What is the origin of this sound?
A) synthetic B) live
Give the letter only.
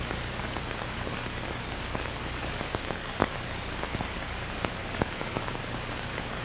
A